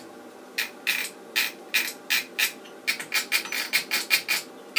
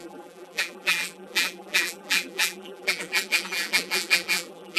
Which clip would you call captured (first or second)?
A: first